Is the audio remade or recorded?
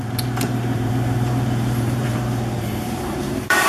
remade